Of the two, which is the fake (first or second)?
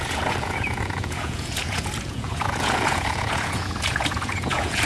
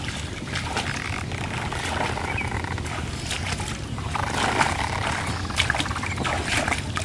first